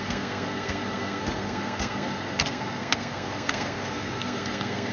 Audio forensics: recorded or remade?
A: remade